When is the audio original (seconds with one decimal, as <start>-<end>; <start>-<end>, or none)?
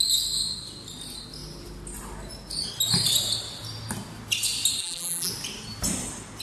0.0-4.8; 5.3-6.4